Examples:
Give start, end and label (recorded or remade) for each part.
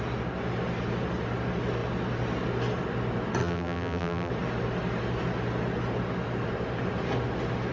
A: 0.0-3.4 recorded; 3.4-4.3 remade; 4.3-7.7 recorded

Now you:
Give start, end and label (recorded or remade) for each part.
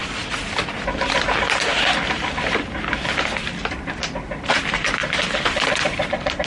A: 0.0-0.7 remade; 0.7-1.7 recorded; 1.7-4.6 remade; 4.6-5.0 recorded; 5.0-6.5 remade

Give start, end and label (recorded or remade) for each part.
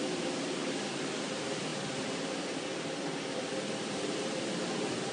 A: 0.0-5.1 remade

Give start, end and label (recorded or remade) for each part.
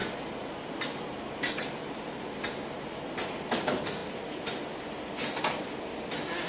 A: 0.0-6.5 recorded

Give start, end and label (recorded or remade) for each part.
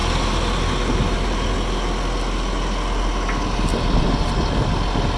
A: 0.0-3.7 recorded; 3.7-4.3 remade; 4.3-5.2 recorded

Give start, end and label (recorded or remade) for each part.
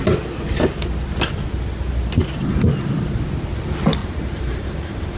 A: 0.0-4.0 recorded; 4.0-5.2 remade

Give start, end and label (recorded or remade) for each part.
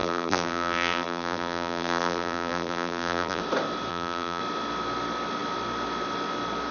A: 0.0-3.4 remade; 3.4-3.9 recorded; 3.9-4.4 remade; 4.4-6.7 recorded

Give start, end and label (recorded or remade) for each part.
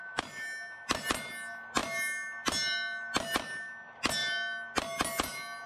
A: 0.0-5.7 recorded